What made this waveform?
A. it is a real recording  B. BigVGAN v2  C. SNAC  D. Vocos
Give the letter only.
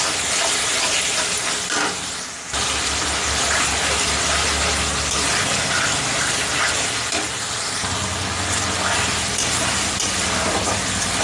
B